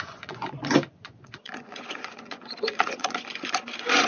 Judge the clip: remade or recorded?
remade